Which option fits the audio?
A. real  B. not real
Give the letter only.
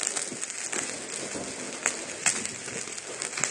A